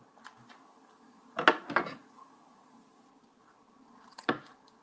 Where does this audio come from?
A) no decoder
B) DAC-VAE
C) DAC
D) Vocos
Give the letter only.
A